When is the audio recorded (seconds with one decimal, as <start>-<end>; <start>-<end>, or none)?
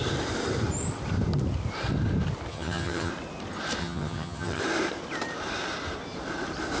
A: 0.0-2.5; 3.1-3.8; 4.6-6.8